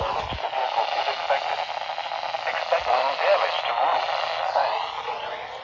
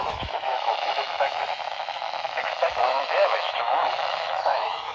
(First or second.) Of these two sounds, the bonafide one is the first